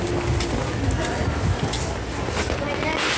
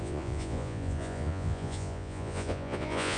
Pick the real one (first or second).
first